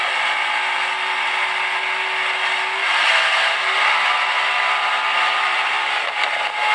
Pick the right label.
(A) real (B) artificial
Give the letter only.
A